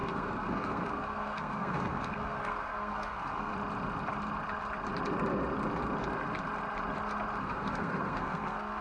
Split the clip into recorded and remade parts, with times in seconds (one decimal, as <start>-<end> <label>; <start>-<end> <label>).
0.0-3.5 remade; 3.5-7.4 recorded; 7.4-8.8 remade